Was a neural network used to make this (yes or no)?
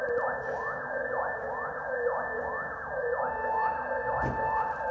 no